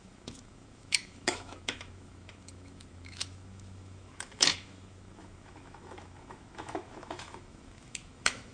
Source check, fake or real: fake